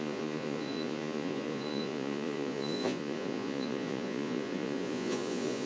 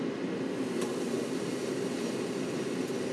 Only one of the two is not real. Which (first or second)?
first